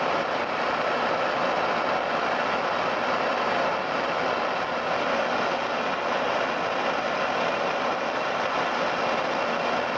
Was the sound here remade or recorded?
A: recorded